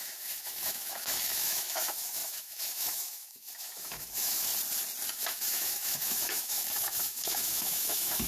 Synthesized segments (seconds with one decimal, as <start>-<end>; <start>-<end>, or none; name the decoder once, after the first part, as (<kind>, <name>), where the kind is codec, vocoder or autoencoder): 0.0-4.5 (autoencoder, DAC-VAE); 5.1-8.3